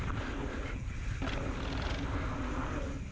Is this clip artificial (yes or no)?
no